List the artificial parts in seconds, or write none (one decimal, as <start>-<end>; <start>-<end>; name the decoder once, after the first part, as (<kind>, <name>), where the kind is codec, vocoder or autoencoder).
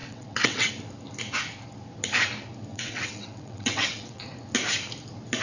0.0-0.7 (vocoder, WaveNeXt); 2.7-4.2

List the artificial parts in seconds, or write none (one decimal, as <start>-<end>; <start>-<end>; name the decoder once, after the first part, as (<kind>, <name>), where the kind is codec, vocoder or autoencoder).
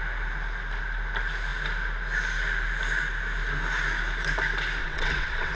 4.8-5.5 (vocoder, WaveNeXt)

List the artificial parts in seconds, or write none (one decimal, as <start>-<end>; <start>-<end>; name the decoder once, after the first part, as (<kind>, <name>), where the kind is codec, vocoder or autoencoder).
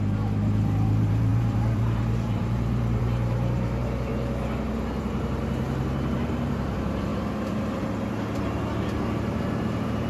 0.0-4.1 (vocoder, BigVGAN v2); 5.0-7.1; 9.6-10.1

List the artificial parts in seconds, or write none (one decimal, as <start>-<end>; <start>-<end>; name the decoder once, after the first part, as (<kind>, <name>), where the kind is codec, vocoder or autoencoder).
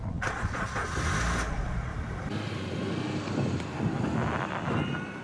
0.0-0.8 (vocoder, Vocos); 1.5-1.9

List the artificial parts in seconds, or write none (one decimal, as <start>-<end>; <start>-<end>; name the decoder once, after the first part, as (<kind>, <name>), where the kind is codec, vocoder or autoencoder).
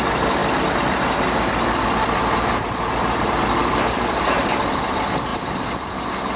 0.0-0.4 (vocoder, BigVGAN v2); 3.0-5.3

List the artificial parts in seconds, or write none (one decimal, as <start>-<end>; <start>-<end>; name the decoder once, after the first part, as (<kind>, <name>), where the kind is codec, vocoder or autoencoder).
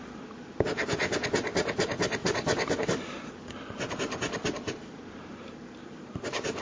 2.2-3.3 (vocoder, BigVGAN v2); 5.8-6.6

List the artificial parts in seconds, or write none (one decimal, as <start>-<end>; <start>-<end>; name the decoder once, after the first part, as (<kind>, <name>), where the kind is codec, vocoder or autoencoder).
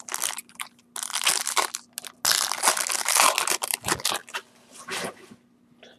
none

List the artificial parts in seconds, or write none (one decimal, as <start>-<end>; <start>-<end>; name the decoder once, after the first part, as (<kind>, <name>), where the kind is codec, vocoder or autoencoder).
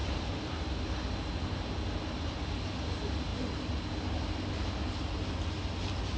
none